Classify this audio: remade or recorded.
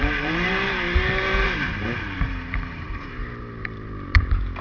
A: remade